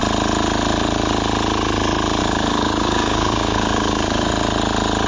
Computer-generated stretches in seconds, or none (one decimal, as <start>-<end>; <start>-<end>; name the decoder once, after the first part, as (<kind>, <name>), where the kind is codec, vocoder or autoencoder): 2.2-4.3 (codec, DAC)